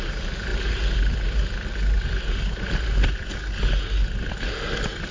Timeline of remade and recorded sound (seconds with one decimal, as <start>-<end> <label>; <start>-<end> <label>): 0.0-5.1 recorded